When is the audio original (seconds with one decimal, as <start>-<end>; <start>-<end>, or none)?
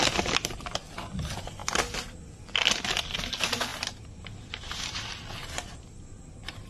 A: 0.0-6.7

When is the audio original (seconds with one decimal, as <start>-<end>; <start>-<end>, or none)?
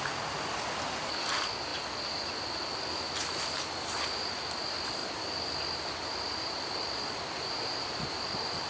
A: 0.0-8.7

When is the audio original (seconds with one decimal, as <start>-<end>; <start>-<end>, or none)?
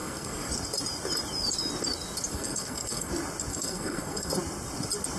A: 0.5-2.3; 3.1-3.5; 4.3-5.2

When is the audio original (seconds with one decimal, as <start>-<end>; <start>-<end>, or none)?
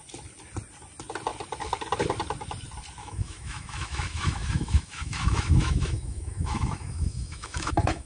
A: 0.0-3.0